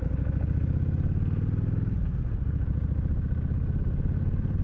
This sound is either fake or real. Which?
real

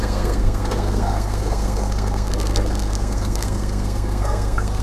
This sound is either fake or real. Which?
fake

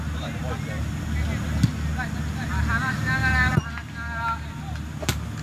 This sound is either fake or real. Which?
real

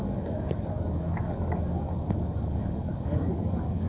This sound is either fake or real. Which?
fake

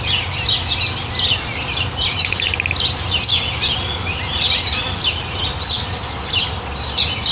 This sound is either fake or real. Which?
real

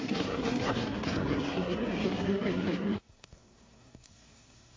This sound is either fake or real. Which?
fake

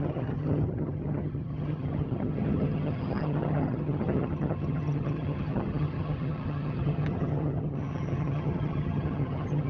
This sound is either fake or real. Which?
fake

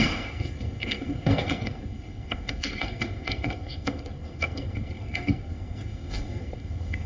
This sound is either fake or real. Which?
fake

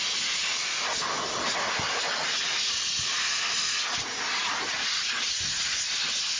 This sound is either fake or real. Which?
real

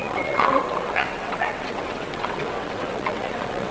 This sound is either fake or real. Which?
fake